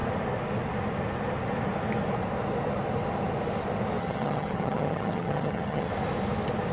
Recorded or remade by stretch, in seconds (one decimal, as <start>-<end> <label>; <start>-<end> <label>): 0.0-4.0 recorded; 4.0-5.9 remade; 5.9-6.7 recorded